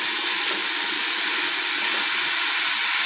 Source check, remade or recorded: recorded